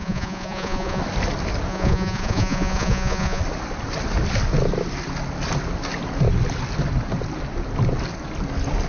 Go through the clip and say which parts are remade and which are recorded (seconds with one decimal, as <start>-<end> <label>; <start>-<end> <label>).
0.0-1.0 remade; 1.0-1.7 recorded; 1.7-3.4 remade; 3.4-8.9 recorded